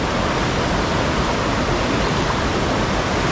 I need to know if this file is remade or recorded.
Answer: recorded